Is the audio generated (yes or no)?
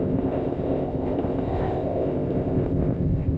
yes